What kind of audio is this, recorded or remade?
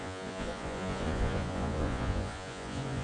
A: remade